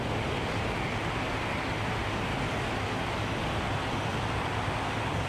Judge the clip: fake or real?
real